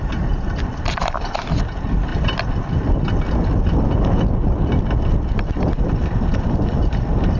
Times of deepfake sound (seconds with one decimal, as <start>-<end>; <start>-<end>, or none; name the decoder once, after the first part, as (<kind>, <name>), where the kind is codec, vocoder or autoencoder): 0.0-2.1 (vocoder, BigVGAN v2); 5.2-7.4